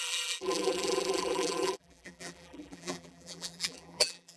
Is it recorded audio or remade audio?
remade